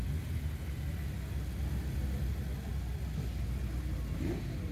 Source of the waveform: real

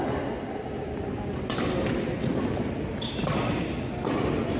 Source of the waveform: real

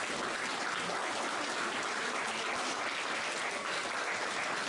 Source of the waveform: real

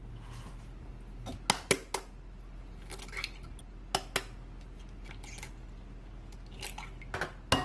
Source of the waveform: real